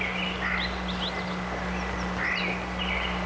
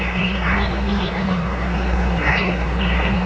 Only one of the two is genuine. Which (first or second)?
first